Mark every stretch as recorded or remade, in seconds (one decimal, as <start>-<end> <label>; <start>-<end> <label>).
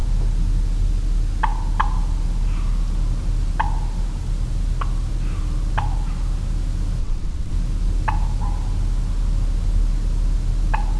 0.0-7.0 recorded; 7.0-7.5 remade; 7.5-11.0 recorded